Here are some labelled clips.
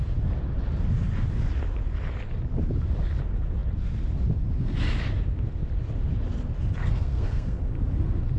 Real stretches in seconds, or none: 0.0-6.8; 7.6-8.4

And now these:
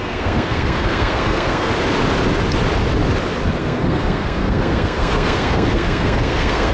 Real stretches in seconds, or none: 1.7-3.6

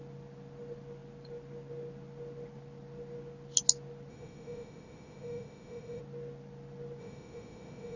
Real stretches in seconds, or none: 0.0-4.1; 6.0-7.0

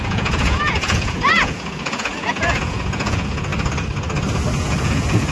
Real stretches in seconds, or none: 3.5-4.6

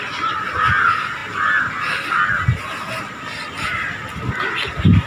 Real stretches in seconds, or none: 0.0-5.1